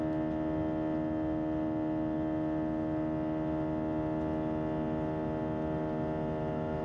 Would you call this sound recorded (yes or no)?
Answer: yes